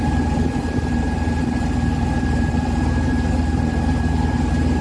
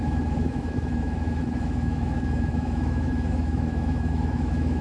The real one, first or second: first